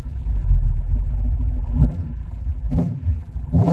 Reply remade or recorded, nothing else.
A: remade